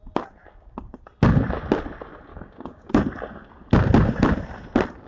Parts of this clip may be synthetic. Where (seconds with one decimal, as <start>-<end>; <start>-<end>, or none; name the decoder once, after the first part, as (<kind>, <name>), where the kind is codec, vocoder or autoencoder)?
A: 2.3-3.0 (codec, DAC)